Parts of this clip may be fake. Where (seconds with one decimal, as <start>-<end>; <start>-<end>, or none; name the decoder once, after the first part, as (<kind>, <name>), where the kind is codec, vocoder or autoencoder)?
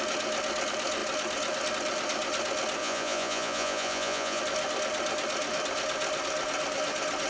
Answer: 2.8-4.4 (vocoder, Vocos)